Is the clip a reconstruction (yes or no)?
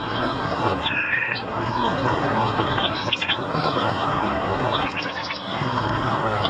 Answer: yes